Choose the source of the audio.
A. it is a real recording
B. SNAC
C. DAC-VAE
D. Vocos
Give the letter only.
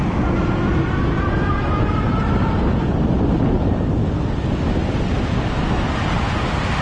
A